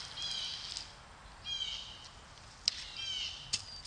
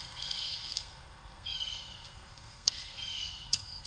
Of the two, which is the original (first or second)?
first